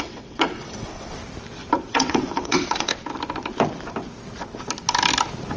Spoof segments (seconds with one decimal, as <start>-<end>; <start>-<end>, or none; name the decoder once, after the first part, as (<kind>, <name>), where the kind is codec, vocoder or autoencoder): 0.0-1.2 (vocoder, WaveNeXt); 1.9-2.9